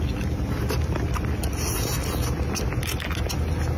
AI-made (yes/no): no